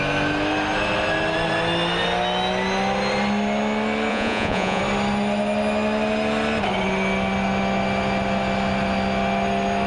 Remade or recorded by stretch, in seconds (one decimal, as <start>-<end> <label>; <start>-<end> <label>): 0.0-4.1 recorded; 4.1-4.8 remade; 4.8-9.9 recorded